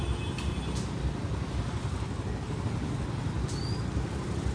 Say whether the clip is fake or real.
real